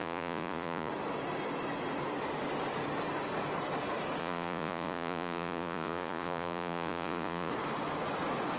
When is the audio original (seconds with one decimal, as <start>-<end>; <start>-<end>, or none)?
0.9-4.2; 7.5-8.6